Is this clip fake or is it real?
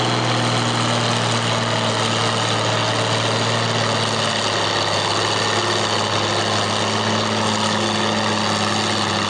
real